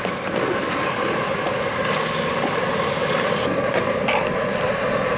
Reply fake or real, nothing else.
real